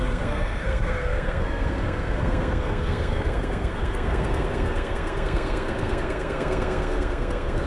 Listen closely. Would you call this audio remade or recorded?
remade